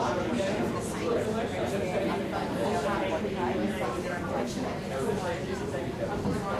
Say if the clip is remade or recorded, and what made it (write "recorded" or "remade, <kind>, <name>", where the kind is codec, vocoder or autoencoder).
recorded